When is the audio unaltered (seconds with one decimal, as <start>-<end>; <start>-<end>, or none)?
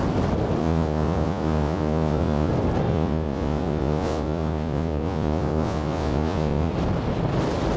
0.0-0.6; 2.5-2.9; 6.7-7.8